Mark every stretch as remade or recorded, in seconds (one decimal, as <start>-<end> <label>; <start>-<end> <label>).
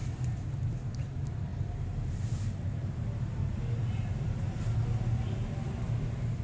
0.0-6.4 recorded